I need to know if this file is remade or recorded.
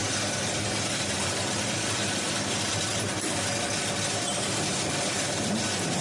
recorded